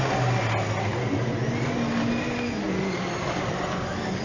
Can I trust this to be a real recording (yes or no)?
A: yes